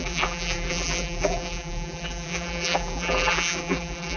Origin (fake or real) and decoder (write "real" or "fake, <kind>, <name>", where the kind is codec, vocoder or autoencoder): fake, vocoder, BigVGAN v2